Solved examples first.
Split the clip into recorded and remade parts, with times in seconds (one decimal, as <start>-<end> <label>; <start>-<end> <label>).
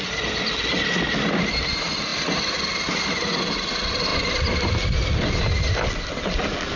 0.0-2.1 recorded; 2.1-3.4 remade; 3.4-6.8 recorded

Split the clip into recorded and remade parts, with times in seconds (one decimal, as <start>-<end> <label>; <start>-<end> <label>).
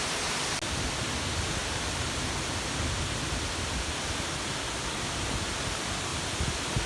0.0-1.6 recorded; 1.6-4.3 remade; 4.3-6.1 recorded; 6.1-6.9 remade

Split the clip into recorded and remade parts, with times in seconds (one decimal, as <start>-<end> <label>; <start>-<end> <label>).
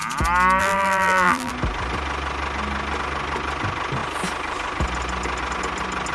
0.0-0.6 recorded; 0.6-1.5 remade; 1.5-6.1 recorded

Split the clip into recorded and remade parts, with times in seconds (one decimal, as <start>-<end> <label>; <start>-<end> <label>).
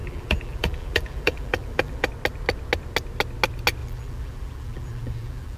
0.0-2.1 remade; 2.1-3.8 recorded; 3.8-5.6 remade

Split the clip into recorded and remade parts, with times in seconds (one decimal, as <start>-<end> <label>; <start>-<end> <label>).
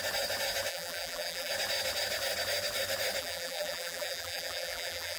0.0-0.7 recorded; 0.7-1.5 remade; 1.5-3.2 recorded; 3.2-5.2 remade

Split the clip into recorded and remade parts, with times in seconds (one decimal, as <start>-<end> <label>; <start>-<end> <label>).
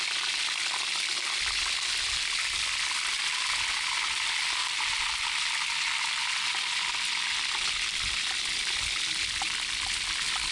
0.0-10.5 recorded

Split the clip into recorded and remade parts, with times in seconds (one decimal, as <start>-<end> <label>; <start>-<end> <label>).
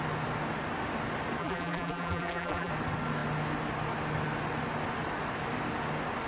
0.0-1.4 recorded; 1.4-2.7 remade; 2.7-6.3 recorded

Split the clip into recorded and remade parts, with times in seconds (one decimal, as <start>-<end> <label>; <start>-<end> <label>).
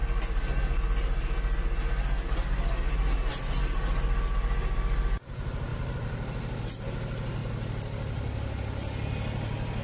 0.0-5.7 recorded; 5.7-6.6 remade; 6.6-9.8 recorded